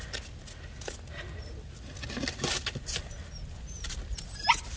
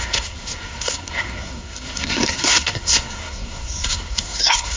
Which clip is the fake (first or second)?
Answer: second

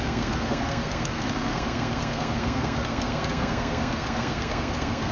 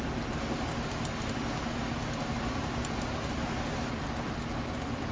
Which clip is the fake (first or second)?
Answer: first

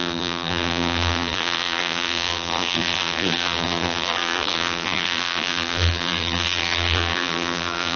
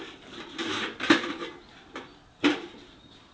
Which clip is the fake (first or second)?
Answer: first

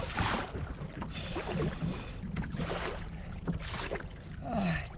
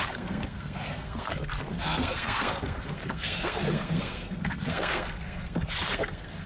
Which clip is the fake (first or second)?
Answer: second